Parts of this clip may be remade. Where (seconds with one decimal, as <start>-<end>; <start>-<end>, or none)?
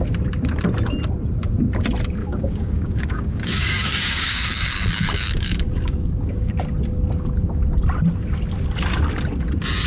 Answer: 2.2-6.5